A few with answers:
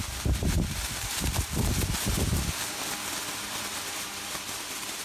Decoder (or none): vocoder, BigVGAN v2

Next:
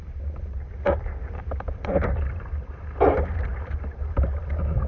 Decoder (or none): none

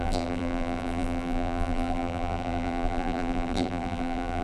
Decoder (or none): vocoder, BigVGAN v2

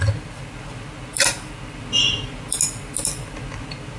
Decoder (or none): none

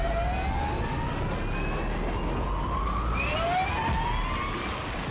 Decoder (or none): none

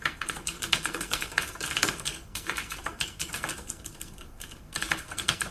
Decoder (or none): codec, SNAC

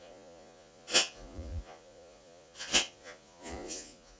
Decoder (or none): vocoder, Vocos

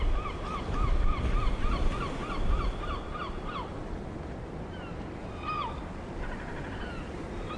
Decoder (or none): none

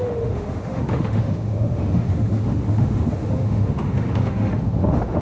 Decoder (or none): autoencoder, DAC-VAE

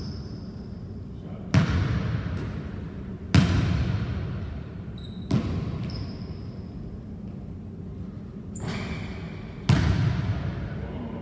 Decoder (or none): none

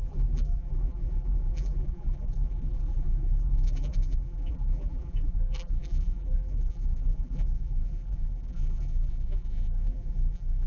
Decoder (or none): vocoder, BigVGAN v2